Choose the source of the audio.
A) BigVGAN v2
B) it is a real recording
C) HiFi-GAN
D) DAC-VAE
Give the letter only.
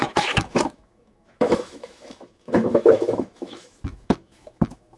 D